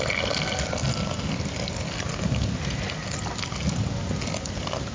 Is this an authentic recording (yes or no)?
yes